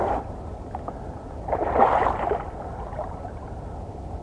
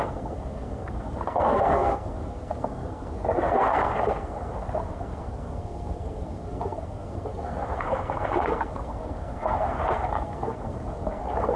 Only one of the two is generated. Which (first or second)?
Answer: second